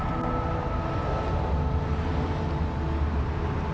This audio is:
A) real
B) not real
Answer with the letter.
A